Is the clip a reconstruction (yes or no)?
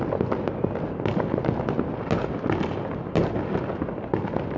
no